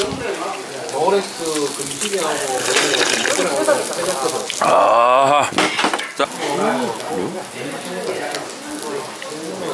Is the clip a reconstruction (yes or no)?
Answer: no